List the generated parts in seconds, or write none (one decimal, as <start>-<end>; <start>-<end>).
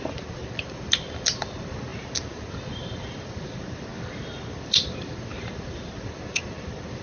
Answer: 0.0-3.9; 4.6-7.0